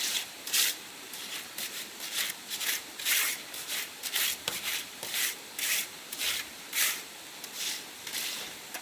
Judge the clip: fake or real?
fake